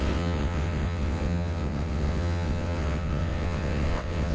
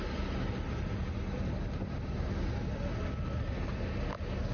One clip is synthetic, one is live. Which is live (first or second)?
second